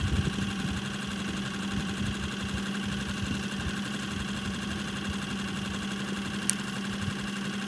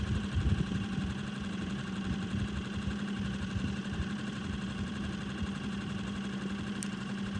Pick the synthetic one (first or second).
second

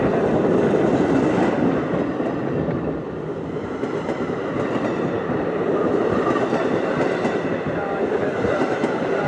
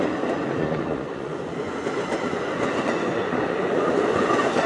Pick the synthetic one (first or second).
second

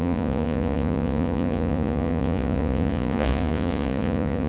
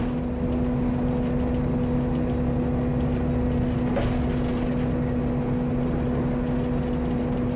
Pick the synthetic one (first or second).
first